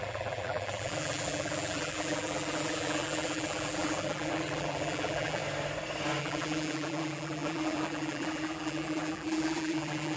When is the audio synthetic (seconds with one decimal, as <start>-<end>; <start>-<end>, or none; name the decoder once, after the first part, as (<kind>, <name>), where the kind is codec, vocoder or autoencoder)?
0.0-5.4 (vocoder, BigVGAN v2); 6.2-10.2